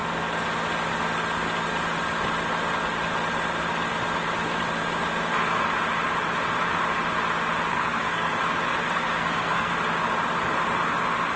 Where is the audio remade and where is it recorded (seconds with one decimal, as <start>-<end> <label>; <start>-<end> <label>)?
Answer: 0.0-7.7 recorded; 7.7-8.3 remade; 8.3-8.8 recorded; 8.8-9.7 remade; 9.7-11.4 recorded

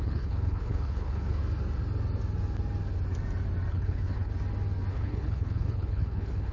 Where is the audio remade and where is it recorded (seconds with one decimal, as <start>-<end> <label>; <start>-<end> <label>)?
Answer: 0.0-1.4 remade; 1.4-3.7 recorded; 3.7-4.3 remade; 4.3-4.9 recorded; 4.9-6.5 remade

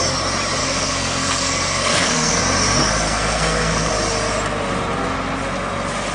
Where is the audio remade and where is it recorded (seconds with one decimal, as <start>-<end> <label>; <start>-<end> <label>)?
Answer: 0.0-0.6 recorded; 0.6-2.4 remade; 2.4-2.8 recorded; 2.8-3.9 remade; 3.9-6.1 recorded

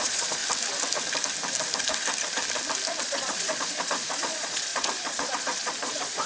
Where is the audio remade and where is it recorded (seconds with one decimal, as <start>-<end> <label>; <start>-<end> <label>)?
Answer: 0.0-0.4 remade; 0.4-3.0 recorded; 3.0-6.3 remade

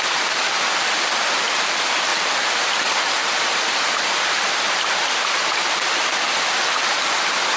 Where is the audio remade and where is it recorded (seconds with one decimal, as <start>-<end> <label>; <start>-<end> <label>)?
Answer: 0.0-7.6 recorded